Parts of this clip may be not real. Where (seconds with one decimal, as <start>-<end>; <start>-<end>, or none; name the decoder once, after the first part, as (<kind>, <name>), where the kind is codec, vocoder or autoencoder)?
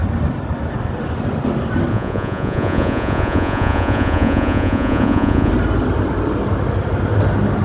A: 1.9-5.5 (vocoder, Vocos)